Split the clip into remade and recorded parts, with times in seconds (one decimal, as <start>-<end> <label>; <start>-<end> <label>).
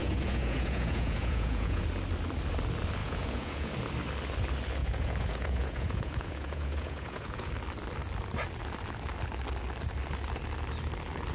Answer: 0.0-1.8 remade; 1.8-3.0 recorded; 3.0-3.7 remade; 3.7-4.8 recorded; 4.8-7.5 remade; 7.5-11.3 recorded